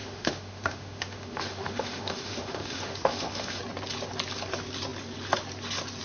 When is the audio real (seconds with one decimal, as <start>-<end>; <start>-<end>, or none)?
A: 3.6-6.0